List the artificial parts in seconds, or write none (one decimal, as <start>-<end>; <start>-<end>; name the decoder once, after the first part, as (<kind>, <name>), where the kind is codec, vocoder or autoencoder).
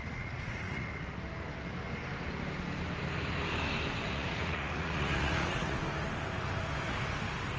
0.0-0.9 (vocoder, Vocos); 4.1-5.8